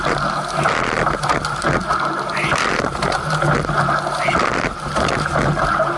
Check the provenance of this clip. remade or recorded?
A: recorded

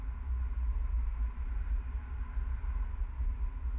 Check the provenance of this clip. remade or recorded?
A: recorded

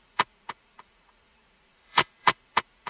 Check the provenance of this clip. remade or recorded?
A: remade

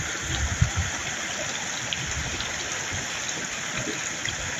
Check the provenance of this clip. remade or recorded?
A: recorded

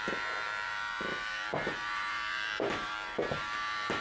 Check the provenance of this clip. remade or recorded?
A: remade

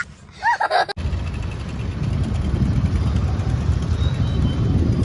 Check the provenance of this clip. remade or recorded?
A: recorded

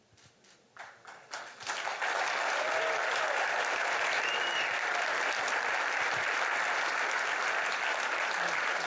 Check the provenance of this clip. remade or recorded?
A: recorded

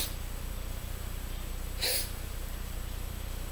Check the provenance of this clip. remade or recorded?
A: remade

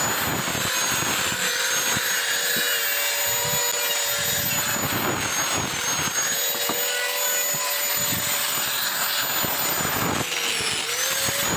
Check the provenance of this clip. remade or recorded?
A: recorded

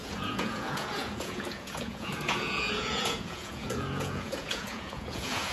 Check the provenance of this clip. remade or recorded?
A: remade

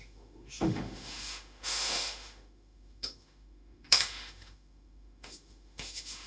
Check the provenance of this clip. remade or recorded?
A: remade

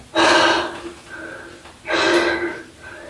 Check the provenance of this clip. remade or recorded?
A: recorded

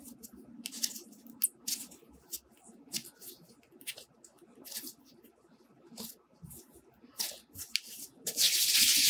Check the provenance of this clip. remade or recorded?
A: recorded